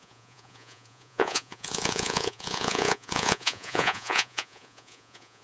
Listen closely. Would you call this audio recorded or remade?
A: remade